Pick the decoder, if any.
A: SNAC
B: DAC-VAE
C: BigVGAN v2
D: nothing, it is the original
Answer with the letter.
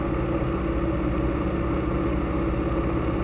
D